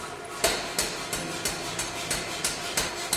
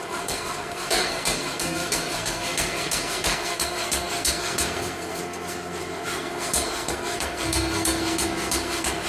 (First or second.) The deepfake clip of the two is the second